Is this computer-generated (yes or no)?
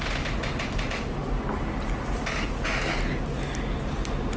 no